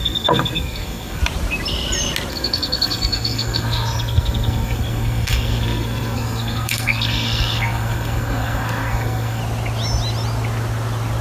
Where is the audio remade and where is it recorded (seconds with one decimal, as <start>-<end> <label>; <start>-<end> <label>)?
0.0-1.2 remade; 1.2-2.3 recorded; 2.3-9.4 remade; 9.4-11.2 recorded